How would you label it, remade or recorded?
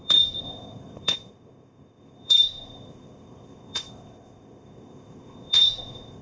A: remade